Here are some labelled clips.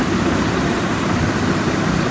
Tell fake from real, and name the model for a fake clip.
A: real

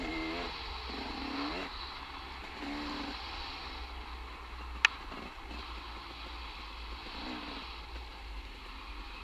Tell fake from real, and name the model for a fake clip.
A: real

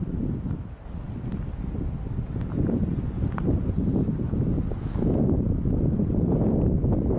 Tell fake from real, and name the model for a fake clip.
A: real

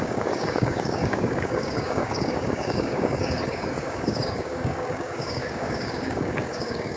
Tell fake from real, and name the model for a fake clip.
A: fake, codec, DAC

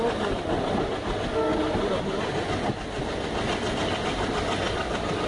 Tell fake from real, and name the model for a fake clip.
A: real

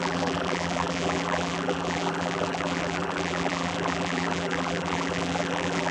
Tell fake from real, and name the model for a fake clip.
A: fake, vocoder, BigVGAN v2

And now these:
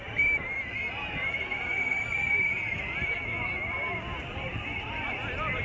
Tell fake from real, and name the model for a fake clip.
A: real